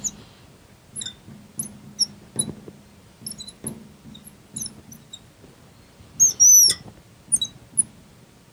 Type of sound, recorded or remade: recorded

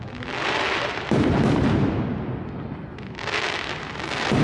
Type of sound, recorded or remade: recorded